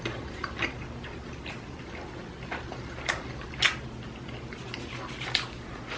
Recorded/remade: recorded